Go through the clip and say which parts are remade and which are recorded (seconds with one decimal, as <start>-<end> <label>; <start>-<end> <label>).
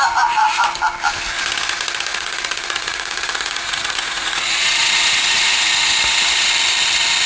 0.0-2.1 recorded; 2.1-6.5 remade; 6.5-7.3 recorded